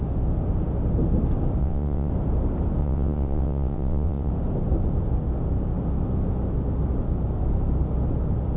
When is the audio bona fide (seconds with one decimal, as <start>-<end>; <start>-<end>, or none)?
0.0-1.6; 2.1-2.8; 4.3-8.6